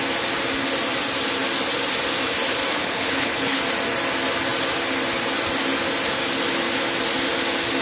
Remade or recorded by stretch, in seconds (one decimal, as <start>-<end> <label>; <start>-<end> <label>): 0.0-2.7 recorded; 2.7-3.6 remade; 3.6-7.8 recorded